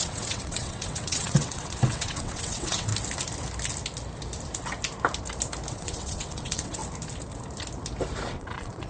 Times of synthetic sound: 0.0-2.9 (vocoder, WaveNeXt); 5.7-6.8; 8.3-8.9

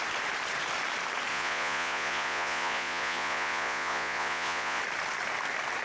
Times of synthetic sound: 1.3-4.8 (vocoder, Vocos)